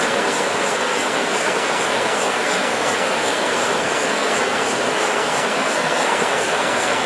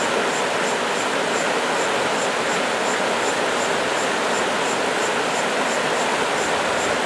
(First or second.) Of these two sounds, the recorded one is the second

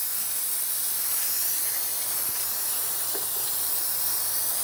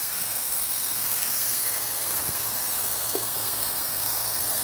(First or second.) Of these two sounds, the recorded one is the first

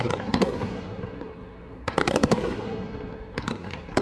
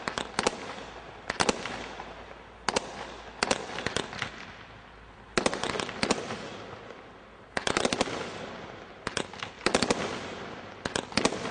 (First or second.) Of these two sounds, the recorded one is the second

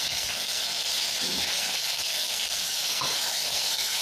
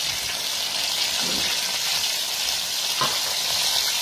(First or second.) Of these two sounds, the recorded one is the second